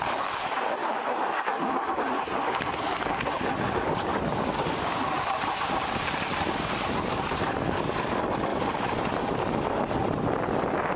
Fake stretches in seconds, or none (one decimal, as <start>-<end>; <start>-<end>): 4.1-5.1